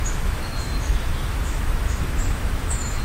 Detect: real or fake fake